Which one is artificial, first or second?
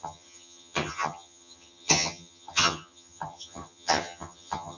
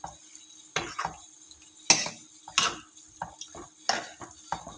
first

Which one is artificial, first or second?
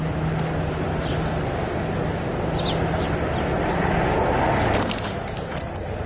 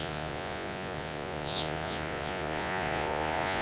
second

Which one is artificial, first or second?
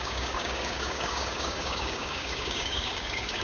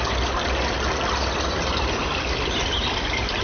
first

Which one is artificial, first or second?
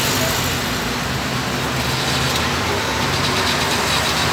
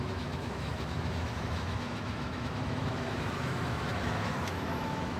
second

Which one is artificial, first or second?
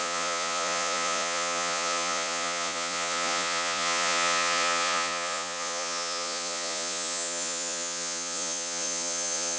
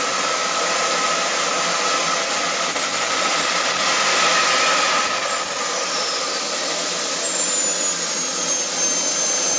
first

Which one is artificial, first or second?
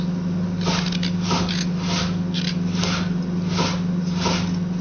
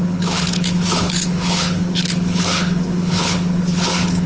second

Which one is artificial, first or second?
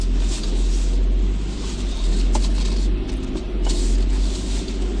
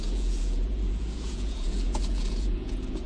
second